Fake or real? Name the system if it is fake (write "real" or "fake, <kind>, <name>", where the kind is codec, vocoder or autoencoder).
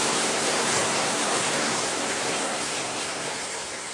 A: fake, codec, SNAC